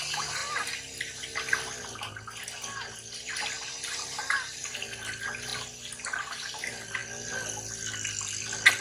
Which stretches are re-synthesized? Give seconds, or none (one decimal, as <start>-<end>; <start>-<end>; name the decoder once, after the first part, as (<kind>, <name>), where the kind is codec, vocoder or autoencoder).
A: none